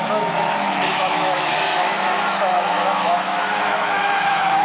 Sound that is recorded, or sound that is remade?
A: remade